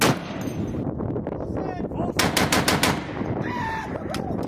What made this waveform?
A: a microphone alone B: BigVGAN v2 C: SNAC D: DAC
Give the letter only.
A